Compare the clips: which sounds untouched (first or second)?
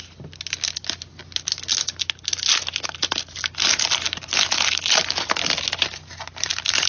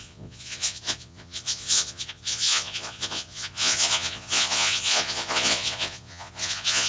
first